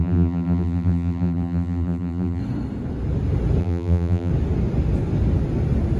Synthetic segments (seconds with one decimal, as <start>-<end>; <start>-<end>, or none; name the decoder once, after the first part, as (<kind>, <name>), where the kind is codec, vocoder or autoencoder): 0.0-2.4 (vocoder, BigVGAN v2); 3.6-4.3